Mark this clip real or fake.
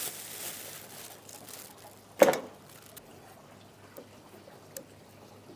real